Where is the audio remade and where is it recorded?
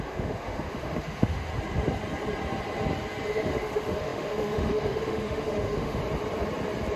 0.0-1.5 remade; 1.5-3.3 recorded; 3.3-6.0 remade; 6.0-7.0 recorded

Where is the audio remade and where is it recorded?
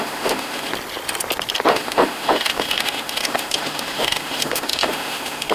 0.0-0.7 remade; 0.7-1.7 recorded; 1.7-5.5 remade